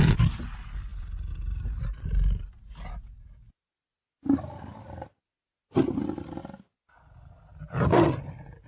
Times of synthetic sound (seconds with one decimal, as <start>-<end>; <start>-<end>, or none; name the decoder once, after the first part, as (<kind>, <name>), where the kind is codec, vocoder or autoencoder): none